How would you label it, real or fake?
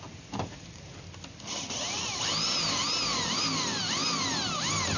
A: real